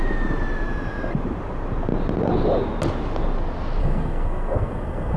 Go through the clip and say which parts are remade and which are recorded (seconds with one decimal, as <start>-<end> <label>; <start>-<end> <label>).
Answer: 0.0-3.8 recorded; 3.8-5.2 remade